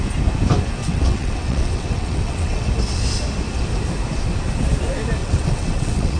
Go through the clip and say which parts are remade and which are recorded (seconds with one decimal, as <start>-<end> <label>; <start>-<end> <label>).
0.0-0.8 recorded; 0.8-2.7 remade; 2.7-5.2 recorded; 5.2-6.2 remade